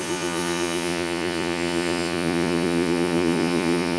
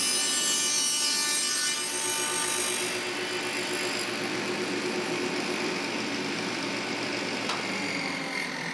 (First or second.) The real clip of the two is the second